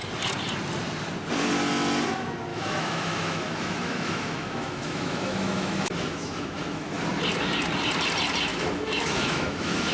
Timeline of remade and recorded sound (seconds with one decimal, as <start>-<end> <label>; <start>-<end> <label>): 0.0-2.5 recorded; 2.5-7.0 remade; 7.0-8.5 recorded; 8.5-9.9 remade